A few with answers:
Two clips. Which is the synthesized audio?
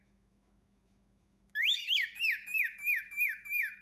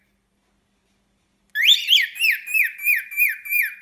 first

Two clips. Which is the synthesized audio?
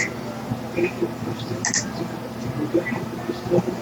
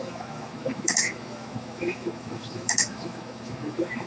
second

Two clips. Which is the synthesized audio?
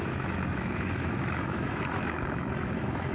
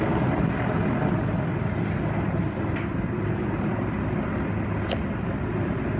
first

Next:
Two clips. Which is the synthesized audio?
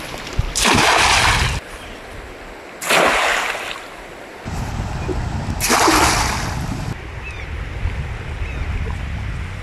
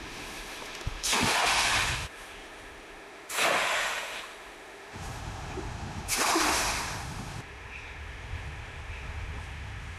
second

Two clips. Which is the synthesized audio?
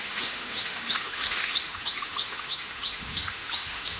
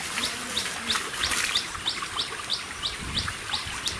first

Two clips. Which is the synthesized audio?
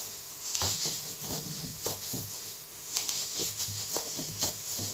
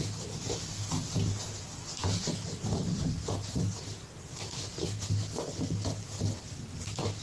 first